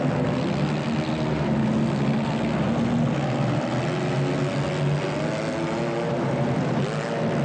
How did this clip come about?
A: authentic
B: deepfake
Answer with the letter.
A